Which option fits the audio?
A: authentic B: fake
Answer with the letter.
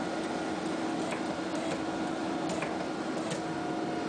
A